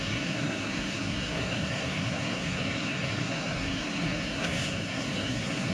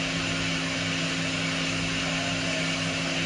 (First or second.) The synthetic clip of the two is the first